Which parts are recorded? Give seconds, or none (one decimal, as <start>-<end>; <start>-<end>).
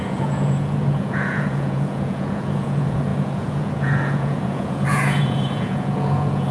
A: none